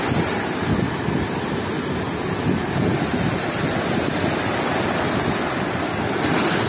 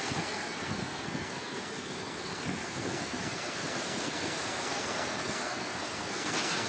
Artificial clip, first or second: second